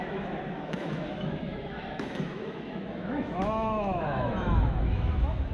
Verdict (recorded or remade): remade